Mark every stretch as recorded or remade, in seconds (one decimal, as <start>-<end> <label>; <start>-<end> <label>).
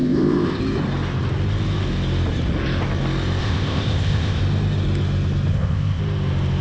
0.0-0.6 remade; 0.6-3.4 recorded; 3.4-4.4 remade; 4.4-5.5 recorded; 5.5-6.0 remade; 6.0-6.6 recorded